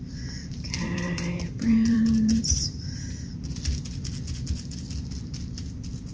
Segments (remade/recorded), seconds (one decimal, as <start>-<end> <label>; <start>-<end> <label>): 0.0-0.4 recorded; 0.4-2.8 remade; 2.8-6.1 recorded